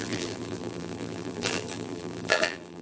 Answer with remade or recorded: remade